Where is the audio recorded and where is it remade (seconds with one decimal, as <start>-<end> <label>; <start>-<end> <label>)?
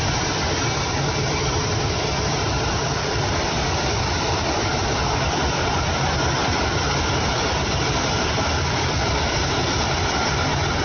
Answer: 0.0-10.8 remade